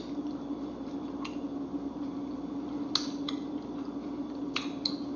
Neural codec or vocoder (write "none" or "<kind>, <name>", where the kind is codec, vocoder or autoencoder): none